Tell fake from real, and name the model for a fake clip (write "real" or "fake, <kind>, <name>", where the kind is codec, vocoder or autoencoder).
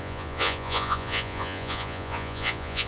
fake, vocoder, Vocos